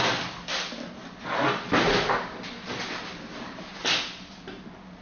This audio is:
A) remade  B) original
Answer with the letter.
B